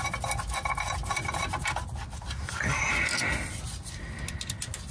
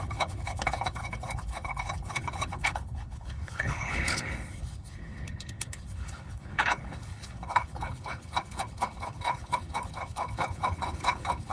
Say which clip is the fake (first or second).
second